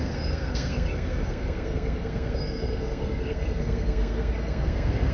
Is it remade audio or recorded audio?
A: remade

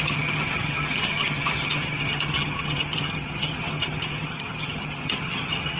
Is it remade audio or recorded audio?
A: remade